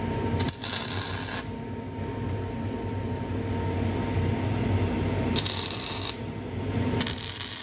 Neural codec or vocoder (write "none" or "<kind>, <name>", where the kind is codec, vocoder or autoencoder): none